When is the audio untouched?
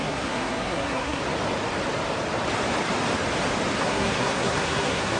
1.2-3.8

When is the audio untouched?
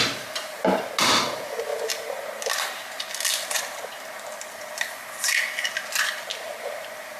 0.0-7.2